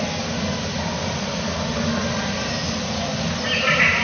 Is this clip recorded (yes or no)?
yes